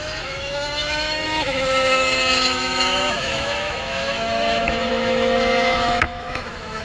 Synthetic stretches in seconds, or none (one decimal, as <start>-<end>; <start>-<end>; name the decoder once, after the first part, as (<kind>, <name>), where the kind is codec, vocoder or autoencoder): 0.0-6.8 (autoencoder, DAC-VAE)